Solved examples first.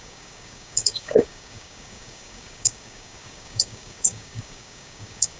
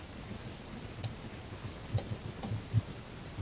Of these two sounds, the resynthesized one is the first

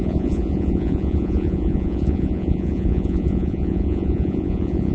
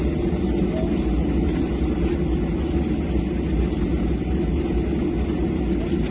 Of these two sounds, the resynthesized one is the first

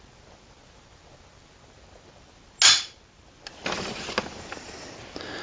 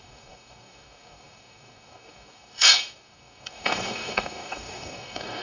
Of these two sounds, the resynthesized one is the second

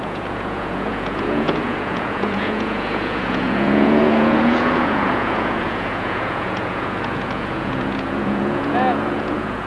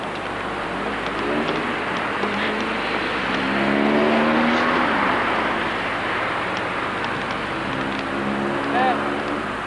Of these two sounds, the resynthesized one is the first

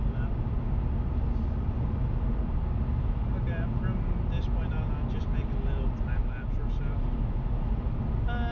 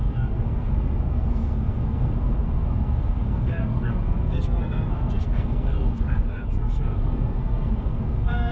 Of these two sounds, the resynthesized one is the second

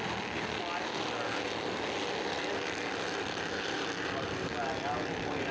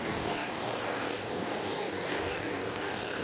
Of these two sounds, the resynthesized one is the second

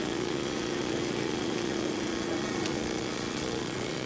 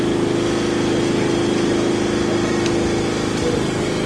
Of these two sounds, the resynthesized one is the first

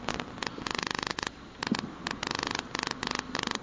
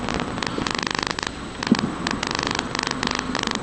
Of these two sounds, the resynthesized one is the first